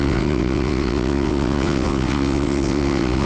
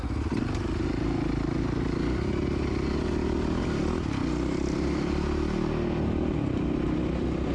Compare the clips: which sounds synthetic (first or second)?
first